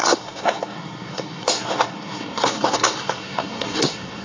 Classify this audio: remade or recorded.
remade